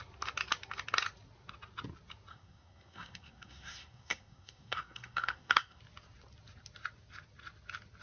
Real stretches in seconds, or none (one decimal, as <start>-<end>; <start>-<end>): 0.0-2.3; 5.8-8.0